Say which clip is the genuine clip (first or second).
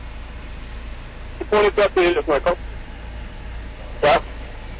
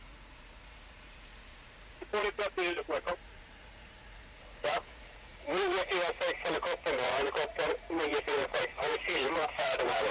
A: first